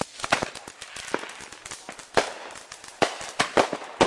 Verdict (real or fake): real